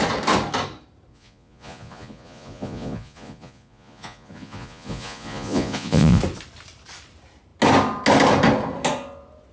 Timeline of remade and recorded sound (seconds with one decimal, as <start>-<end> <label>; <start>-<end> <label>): 0.0-1.1 recorded; 1.1-6.2 remade; 6.2-9.5 recorded